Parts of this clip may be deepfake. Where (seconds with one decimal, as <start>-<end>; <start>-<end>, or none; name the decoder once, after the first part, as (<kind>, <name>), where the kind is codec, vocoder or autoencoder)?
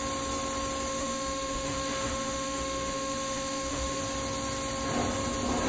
0.9-4.0 (autoencoder, DAC-VAE)